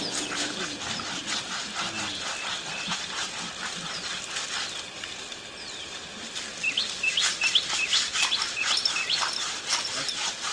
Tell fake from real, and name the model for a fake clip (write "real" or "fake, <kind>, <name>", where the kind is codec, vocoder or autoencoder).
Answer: real